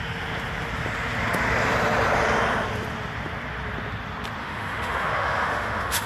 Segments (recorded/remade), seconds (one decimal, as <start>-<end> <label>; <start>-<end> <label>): 0.0-4.4 recorded; 4.4-6.1 remade